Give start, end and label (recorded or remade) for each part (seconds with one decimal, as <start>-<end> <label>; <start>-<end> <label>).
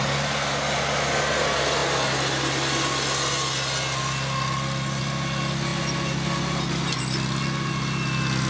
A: 0.0-8.5 recorded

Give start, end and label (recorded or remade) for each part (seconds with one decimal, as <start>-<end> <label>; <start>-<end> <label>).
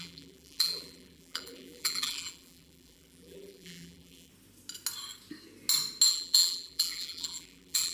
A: 0.0-4.3 remade; 4.3-6.1 recorded; 6.1-7.9 remade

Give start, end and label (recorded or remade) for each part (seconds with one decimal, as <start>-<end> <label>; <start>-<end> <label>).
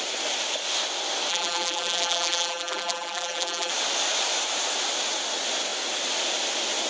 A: 0.0-1.3 recorded; 1.3-3.7 remade; 3.7-6.9 recorded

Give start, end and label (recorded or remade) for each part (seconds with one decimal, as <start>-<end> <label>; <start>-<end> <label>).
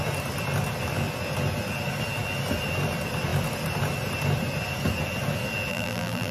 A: 0.0-5.7 recorded; 5.7-6.3 remade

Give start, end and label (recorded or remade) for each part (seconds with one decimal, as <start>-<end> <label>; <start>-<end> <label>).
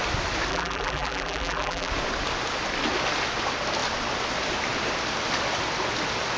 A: 0.0-0.5 recorded; 0.5-1.9 remade; 1.9-6.4 recorded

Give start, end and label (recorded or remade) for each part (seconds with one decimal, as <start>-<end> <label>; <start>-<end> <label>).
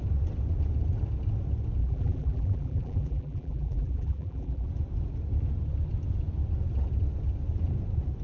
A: 0.0-1.8 recorded; 1.8-4.7 remade; 4.7-8.2 recorded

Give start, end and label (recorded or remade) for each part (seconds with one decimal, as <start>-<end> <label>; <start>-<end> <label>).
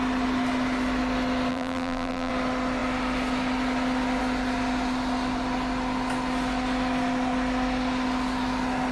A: 0.0-1.5 recorded; 1.5-2.3 remade; 2.3-8.9 recorded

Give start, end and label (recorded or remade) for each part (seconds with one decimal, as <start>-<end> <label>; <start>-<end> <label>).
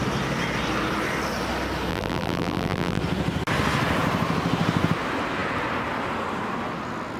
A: 0.0-1.9 recorded; 1.9-3.0 remade; 3.0-7.2 recorded